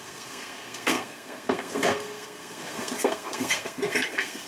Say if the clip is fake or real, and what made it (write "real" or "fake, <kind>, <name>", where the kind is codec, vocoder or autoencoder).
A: fake, codec, SNAC